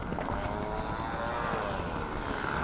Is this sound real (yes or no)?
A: yes